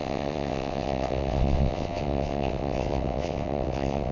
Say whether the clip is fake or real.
fake